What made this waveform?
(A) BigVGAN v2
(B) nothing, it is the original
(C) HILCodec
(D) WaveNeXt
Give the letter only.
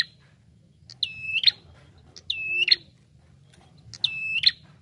B